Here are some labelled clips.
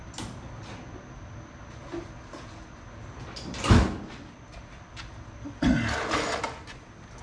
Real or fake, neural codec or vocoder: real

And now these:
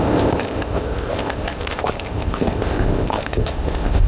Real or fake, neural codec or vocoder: fake, codec, ZipCodec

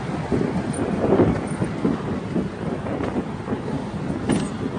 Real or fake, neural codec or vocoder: real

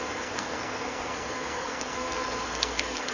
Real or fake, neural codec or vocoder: fake, codec, SNAC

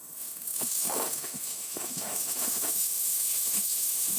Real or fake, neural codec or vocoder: fake, autoencoder, DAC-VAE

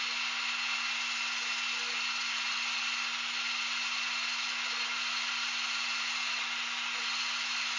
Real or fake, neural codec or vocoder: real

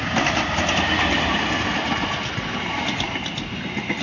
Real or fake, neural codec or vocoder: real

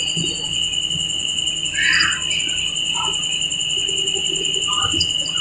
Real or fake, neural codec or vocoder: real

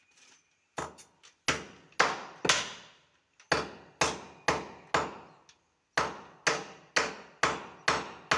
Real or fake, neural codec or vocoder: real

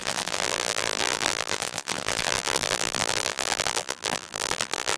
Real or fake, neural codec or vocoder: fake, vocoder, BigVGAN v2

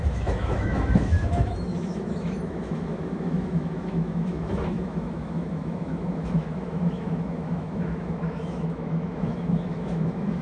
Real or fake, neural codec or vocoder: fake, autoencoder, DAC-VAE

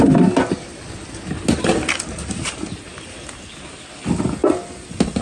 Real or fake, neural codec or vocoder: real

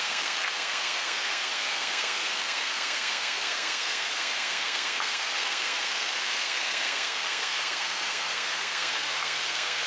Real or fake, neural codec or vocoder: fake, codec, SNAC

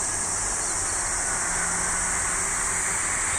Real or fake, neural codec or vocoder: real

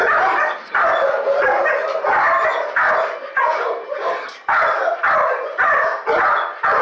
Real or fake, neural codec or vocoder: real